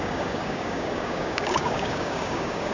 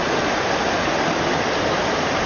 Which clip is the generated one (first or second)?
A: first